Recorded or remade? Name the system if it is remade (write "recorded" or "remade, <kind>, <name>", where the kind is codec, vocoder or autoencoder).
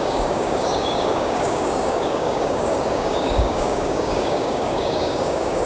remade, codec, DAC